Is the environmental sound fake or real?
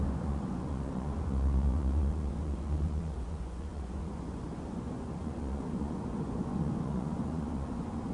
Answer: fake